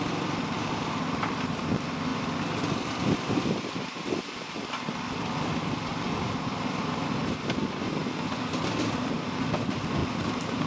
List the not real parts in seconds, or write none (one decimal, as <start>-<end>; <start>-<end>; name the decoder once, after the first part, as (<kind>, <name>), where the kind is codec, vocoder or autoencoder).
0.0-10.7 (vocoder, BigVGAN v2)